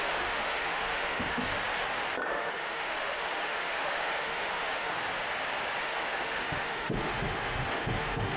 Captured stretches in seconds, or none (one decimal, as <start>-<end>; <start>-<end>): 1.5-2.3; 4.9-5.8